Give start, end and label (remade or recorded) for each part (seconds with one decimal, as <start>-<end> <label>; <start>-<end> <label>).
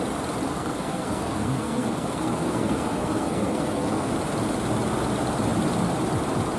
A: 0.0-0.5 recorded; 0.5-4.1 remade; 4.1-6.6 recorded